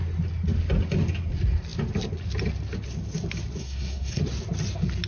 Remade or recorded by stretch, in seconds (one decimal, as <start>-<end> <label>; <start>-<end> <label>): 0.0-3.6 recorded; 3.6-4.2 remade; 4.2-5.1 recorded